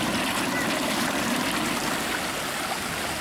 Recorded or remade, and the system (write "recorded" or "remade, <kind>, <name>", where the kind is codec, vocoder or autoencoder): recorded